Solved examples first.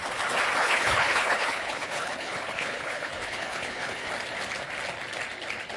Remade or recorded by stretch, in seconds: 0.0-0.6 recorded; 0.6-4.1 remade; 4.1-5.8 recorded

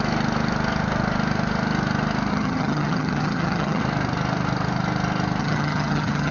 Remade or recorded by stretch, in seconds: 0.0-2.3 recorded; 2.3-3.8 remade; 3.8-5.4 recorded; 5.4-6.3 remade